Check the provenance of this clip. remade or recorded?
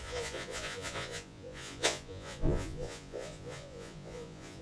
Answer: remade